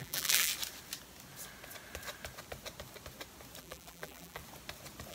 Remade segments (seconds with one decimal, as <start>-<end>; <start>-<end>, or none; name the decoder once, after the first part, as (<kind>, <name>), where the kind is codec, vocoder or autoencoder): 0.0-0.5 (vocoder, BigVGAN v2); 3.6-4.4